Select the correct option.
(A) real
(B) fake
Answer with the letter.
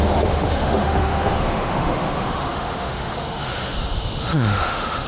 B